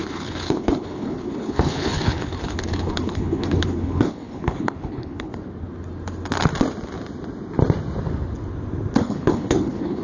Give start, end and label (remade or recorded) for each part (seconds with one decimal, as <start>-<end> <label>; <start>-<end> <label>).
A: 0.0-5.3 remade; 5.3-9.0 recorded; 9.0-10.0 remade